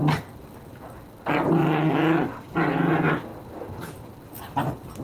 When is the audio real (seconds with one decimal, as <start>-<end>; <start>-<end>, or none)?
0.0-5.0